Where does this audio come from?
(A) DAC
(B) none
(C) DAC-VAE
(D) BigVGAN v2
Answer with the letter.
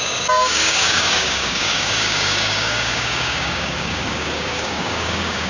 A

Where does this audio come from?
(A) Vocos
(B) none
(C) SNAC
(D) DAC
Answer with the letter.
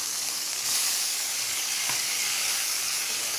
D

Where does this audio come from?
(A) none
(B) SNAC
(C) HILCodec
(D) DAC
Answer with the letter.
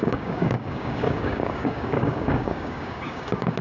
D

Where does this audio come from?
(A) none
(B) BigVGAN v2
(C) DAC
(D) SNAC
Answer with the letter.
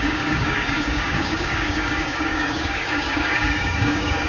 C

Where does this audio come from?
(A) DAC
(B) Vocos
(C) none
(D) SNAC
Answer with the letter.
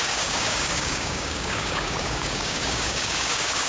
A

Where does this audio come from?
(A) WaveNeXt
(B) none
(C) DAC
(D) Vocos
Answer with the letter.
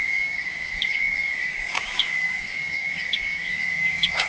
C